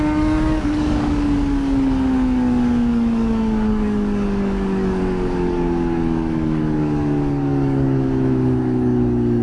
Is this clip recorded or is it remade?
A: remade